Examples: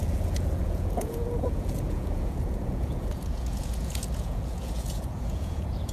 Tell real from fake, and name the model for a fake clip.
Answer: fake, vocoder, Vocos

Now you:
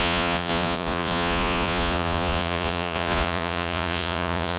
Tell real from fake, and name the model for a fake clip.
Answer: fake, vocoder, Vocos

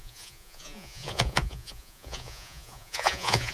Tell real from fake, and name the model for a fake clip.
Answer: fake, vocoder, Vocos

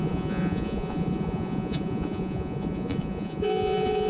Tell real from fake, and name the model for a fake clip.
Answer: fake, vocoder, Vocos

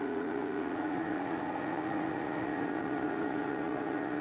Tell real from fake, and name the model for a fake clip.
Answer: fake, vocoder, Vocos